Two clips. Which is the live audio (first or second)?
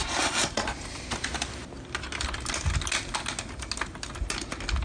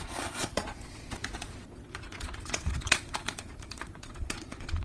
first